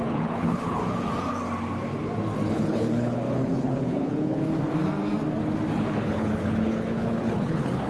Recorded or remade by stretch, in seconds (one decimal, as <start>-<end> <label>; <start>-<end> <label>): 0.0-0.8 remade; 0.8-2.5 recorded; 2.5-4.5 remade; 4.5-5.7 recorded; 5.7-7.9 remade